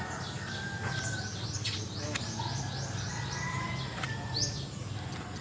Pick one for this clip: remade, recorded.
recorded